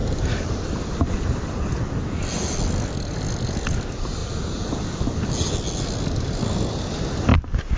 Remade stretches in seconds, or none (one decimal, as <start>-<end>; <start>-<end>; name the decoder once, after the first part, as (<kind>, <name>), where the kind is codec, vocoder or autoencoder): none